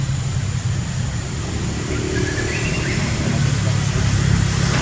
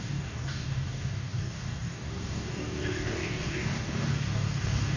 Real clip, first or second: first